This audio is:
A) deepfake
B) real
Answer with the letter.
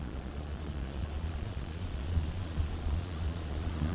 A